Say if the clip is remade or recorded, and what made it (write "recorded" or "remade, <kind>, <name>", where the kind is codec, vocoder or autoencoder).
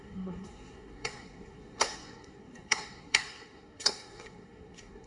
remade, codec, SNAC